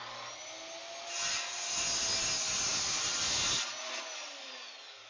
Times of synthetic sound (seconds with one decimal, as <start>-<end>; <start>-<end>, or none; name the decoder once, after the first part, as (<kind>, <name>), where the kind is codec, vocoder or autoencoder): none